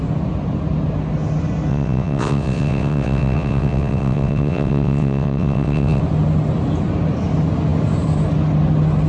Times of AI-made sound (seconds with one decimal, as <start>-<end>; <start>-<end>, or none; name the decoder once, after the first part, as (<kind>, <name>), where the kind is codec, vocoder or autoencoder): 1.7-6.0 (vocoder, WaveNeXt)